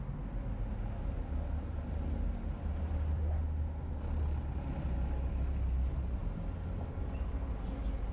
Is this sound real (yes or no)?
yes